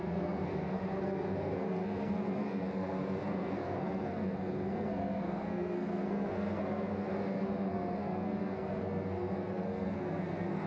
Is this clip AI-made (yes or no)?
yes